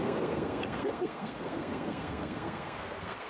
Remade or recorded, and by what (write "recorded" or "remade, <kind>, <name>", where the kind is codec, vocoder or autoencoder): remade, codec, SNAC